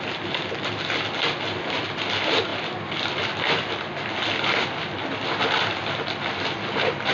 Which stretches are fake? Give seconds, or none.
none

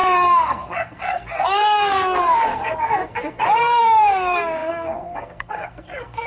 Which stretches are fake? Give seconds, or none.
0.0-6.3 (codec, SNAC)

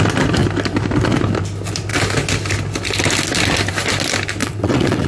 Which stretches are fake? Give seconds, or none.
4.4-5.1 (vocoder, WaveNeXt)

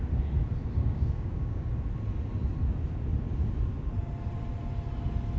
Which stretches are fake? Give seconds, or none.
0.8-1.7 (codec, DAC)

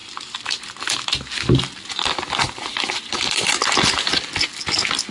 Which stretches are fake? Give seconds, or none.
none

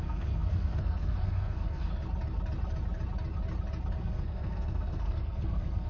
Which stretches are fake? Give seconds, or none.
0.0-1.9 (codec, SNAC); 4.0-5.9

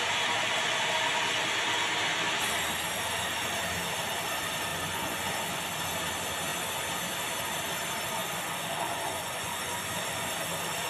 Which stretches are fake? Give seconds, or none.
4.7-5.6 (vocoder, Vocos); 8.2-10.3

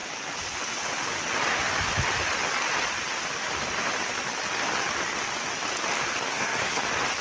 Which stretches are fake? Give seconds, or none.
6.3-6.8 (codec, SNAC)